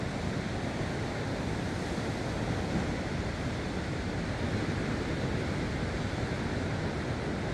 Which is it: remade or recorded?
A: recorded